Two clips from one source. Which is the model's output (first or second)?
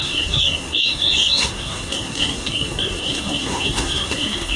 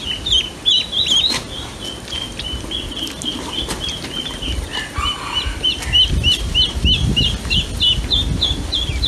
first